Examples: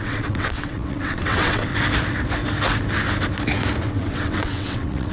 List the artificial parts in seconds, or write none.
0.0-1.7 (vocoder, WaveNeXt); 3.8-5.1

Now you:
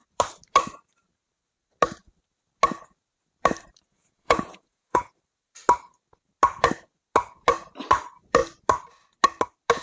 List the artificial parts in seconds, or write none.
3.9-5.1 (vocoder, Vocos)

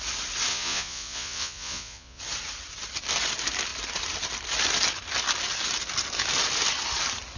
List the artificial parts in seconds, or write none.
0.5-2.2 (vocoder, Vocos)

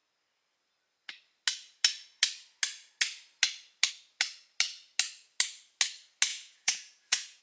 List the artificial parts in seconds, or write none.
6.3-7.4 (vocoder, Vocos)

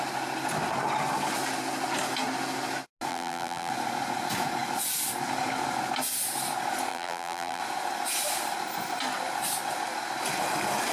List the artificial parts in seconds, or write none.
3.1-3.7 (vocoder, BigVGAN v2); 6.9-7.6

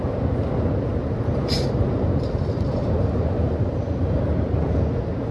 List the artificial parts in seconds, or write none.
1.0-4.2 (vocoder, BigVGAN v2)